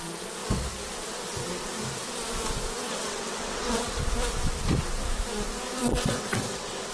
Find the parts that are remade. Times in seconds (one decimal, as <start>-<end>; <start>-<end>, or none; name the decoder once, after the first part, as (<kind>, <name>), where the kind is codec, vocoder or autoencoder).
2.9-4.0 (vocoder, WaveNeXt); 5.8-6.9